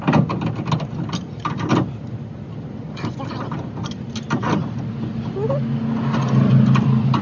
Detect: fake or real real